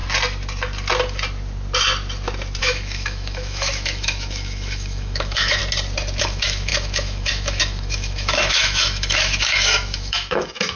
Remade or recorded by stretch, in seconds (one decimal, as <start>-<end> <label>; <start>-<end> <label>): 0.0-2.6 recorded; 2.6-5.6 remade; 5.6-6.2 recorded; 6.2-10.8 remade